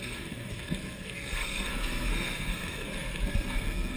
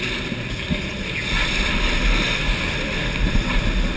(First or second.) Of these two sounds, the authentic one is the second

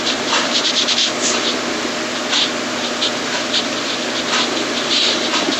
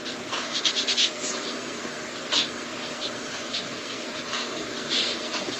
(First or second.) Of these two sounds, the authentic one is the first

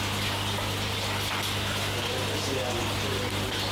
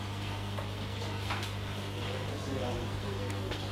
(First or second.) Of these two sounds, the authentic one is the first